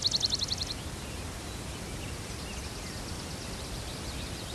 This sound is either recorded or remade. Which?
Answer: recorded